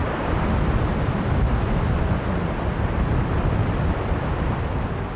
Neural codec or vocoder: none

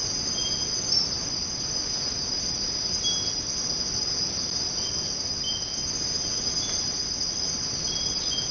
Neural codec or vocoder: none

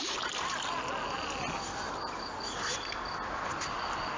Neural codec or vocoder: none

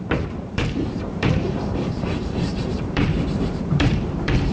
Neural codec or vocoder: vocoder, BigVGAN v2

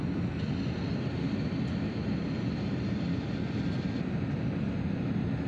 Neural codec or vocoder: none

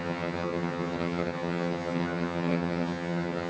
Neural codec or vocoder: vocoder, HiFi-GAN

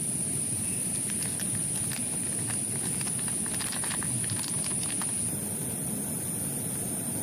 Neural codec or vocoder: none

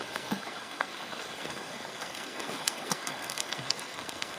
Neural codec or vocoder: codec, SNAC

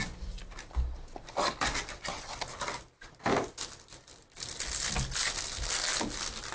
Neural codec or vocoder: none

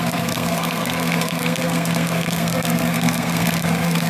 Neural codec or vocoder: codec, SNAC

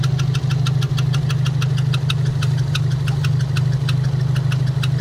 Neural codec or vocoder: none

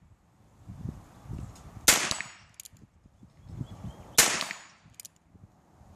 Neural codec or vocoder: none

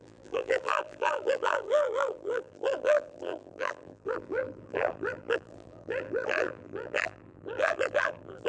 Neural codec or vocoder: vocoder, BigVGAN v2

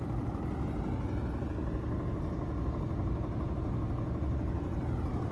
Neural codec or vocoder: none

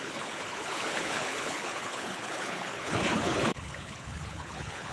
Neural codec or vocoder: codec, HILCodec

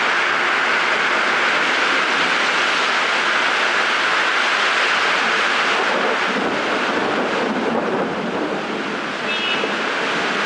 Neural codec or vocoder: none